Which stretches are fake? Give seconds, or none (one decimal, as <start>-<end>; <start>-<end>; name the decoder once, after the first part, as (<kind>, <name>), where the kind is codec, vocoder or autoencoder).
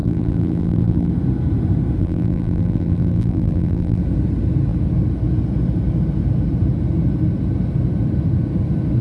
0.0-1.1 (vocoder, BigVGAN v2); 2.0-4.0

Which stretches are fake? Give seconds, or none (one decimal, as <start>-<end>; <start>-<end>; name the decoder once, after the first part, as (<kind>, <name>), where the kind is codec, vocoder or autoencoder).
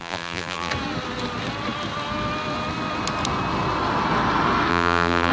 0.0-0.7 (vocoder, BigVGAN v2); 4.7-5.3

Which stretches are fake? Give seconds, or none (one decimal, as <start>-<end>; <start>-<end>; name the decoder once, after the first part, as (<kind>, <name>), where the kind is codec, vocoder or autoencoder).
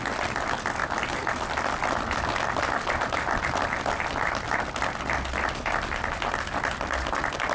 none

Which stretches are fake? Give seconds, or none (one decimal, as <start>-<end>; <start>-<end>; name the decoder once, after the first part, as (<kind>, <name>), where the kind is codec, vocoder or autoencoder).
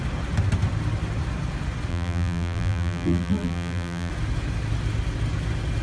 1.9-4.1 (vocoder, BigVGAN v2)